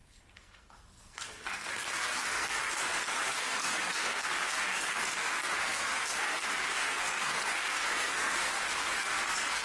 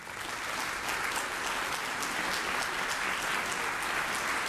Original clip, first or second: second